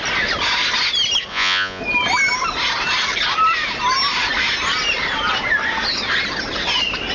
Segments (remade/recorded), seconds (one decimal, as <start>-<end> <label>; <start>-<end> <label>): 0.0-1.3 recorded; 1.3-1.8 remade; 1.8-7.1 recorded